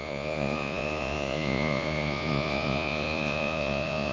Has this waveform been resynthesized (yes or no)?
yes